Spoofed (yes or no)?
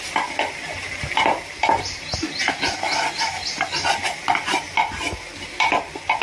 no